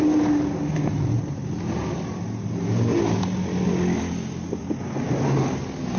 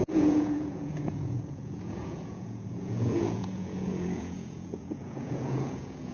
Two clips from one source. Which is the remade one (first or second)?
second